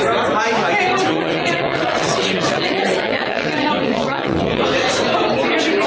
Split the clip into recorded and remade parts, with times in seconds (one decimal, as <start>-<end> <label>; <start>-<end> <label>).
0.0-1.1 recorded; 1.1-4.6 remade; 4.6-5.9 recorded